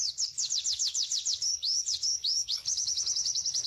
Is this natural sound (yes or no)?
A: no